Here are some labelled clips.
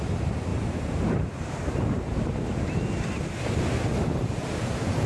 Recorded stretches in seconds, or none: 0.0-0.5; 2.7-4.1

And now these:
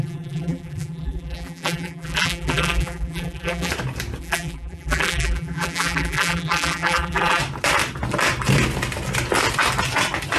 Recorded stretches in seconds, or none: 3.7-4.2; 7.4-10.4

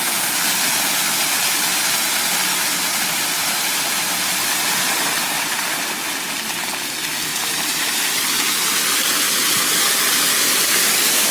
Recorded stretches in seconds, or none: 0.0-3.4; 4.0-7.3; 8.0-11.3

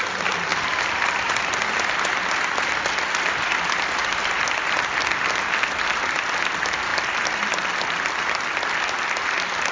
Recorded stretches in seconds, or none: 0.0-0.5; 1.4-6.9; 8.1-9.7

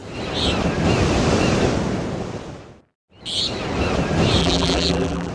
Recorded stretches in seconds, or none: 0.0-4.4

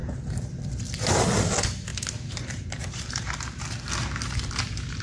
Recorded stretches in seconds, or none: 0.6-1.9; 3.6-5.0

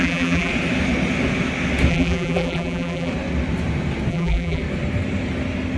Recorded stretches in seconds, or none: 0.5-1.9; 3.1-4.1; 4.6-5.8

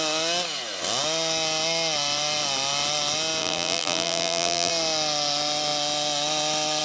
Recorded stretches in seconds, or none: 0.0-3.4; 4.7-6.8